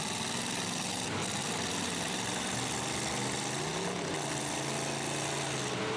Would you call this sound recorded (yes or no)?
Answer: yes